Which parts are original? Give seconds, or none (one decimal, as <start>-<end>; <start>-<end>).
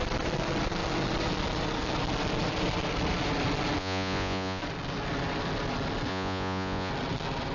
0.0-3.8; 4.6-6.1; 6.9-7.5